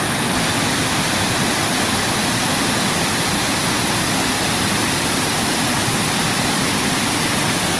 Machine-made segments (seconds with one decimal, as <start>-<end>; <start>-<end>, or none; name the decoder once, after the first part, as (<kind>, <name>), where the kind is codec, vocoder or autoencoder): 0.0-2.4 (vocoder, BigVGAN v2); 3.0-3.6; 4.5-7.8